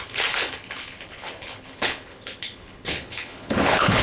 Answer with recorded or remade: remade